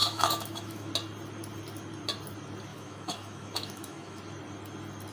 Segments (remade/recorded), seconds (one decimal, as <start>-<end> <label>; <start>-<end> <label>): 0.0-0.9 remade; 0.9-2.7 recorded; 2.7-4.2 remade; 4.2-5.1 recorded